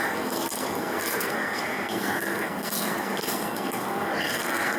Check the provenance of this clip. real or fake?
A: fake